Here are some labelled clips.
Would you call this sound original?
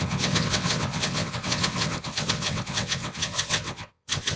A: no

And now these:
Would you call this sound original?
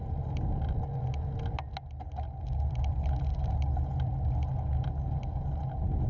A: yes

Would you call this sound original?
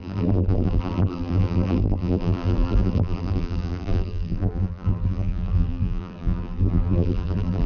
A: no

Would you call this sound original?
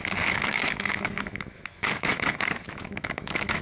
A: no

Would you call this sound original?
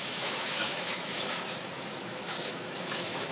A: no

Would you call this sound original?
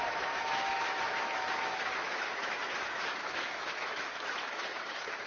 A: no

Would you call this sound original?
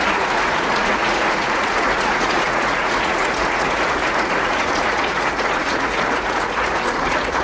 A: no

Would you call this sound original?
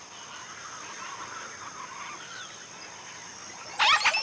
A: yes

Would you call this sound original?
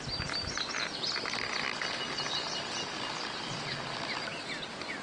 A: yes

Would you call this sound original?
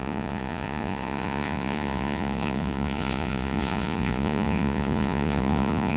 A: no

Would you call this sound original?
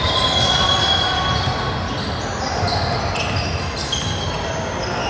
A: yes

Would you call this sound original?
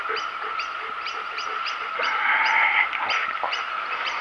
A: yes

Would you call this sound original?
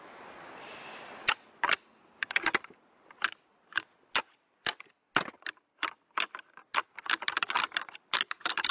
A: yes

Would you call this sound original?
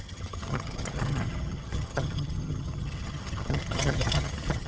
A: no